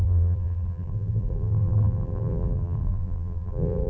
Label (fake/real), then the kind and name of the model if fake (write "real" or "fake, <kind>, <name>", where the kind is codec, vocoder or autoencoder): fake, vocoder, BigVGAN v2